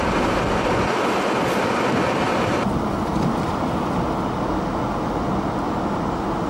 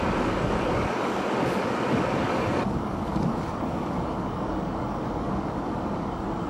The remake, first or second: second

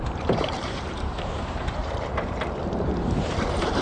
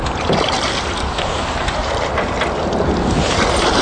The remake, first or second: first